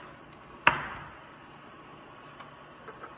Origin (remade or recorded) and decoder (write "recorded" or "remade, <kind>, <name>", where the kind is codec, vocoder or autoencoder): recorded